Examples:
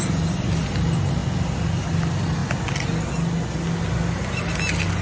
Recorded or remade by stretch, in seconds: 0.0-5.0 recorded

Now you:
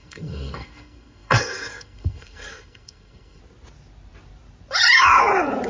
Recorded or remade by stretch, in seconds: 0.0-3.4 remade; 3.4-5.7 recorded

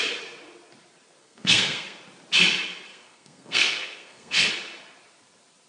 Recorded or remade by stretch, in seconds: 0.0-1.2 recorded; 1.2-2.0 remade; 2.0-2.9 recorded; 2.9-4.5 remade; 4.5-5.7 recorded

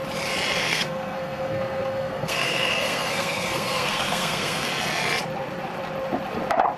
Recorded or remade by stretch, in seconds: 0.0-0.6 recorded; 0.6-4.7 remade; 4.7-6.8 recorded

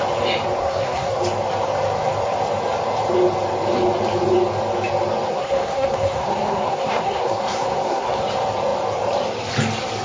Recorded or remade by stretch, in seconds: 0.0-0.6 recorded; 0.6-1.2 remade; 1.2-5.3 recorded; 5.3-8.2 remade; 8.2-10.0 recorded

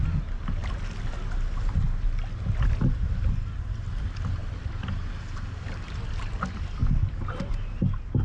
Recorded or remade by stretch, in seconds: 0.0-8.2 recorded